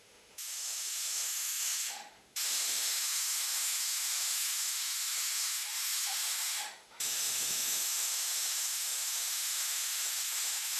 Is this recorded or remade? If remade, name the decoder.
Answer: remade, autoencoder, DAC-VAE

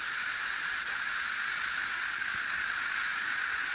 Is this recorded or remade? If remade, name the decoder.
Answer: remade, vocoder, Vocos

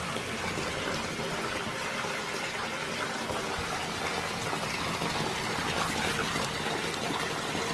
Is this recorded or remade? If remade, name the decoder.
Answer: recorded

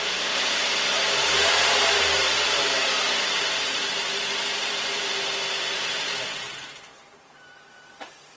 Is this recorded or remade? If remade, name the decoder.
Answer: remade, vocoder, BigVGAN v2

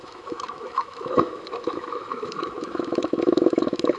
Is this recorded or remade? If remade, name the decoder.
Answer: remade, autoencoder, DAC-VAE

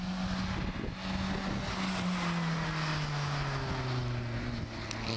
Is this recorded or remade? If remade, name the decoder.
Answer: recorded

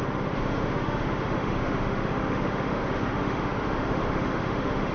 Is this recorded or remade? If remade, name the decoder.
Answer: remade, autoencoder, DAC-VAE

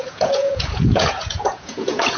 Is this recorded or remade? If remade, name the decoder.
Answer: remade, vocoder, Vocos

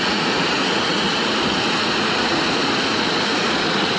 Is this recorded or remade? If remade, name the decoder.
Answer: remade, vocoder, Vocos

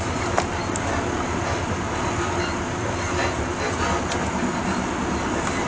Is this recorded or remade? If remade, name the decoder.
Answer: recorded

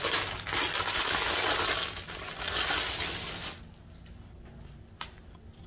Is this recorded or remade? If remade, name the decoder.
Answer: recorded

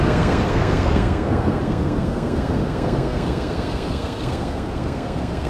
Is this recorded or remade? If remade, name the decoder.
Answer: remade, codec, SNAC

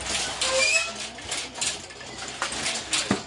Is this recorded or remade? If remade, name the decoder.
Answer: recorded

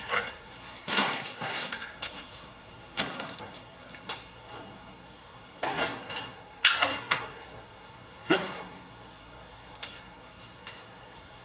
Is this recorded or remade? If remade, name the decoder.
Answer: remade, codec, SNAC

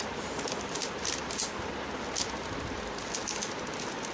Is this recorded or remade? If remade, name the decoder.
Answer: recorded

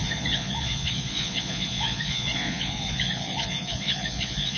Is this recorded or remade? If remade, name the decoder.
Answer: remade, vocoder, Vocos